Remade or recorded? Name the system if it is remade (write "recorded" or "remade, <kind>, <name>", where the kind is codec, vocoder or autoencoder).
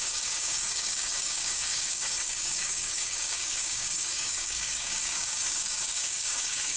remade, codec, DAC